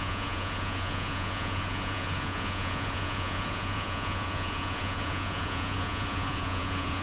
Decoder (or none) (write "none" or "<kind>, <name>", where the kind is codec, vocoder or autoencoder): vocoder, Vocos